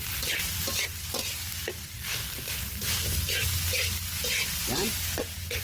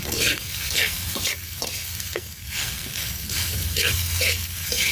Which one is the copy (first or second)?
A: second